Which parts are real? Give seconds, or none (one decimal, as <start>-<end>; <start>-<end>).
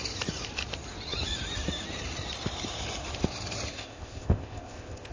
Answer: 0.0-3.7